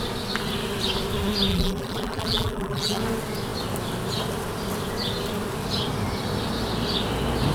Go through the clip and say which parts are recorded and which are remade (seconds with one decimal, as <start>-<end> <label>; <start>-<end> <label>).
0.0-1.5 recorded; 1.5-3.0 remade; 3.0-7.5 recorded